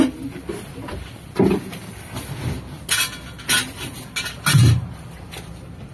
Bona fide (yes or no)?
yes